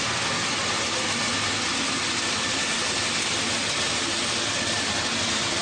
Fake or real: real